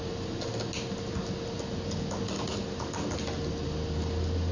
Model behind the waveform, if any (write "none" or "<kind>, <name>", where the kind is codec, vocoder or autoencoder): none